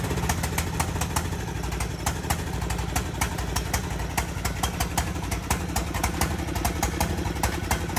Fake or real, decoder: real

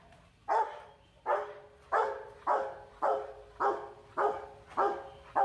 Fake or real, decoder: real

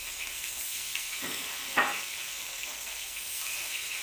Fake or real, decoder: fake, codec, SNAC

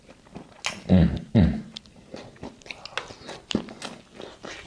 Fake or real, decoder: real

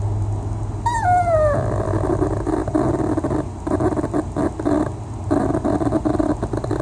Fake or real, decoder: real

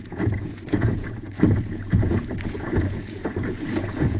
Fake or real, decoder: fake, vocoder, Vocos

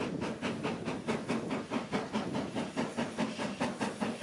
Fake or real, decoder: real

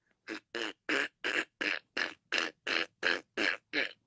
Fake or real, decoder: real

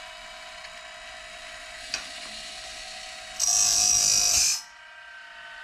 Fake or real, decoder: real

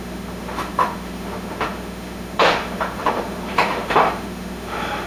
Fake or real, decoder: fake, autoencoder, DAC-VAE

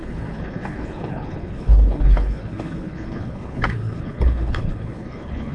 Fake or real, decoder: fake, codec, HILCodec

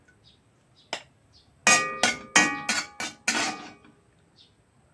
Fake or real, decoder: real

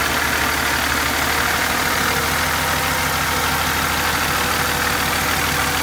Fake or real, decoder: real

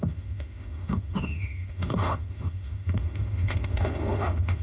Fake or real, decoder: fake, autoencoder, DAC-VAE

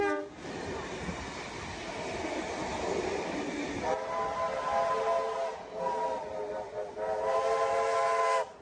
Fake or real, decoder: real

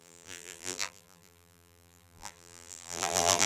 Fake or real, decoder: fake, vocoder, BigVGAN v2